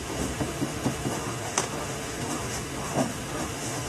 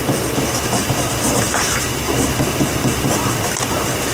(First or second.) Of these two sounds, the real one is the second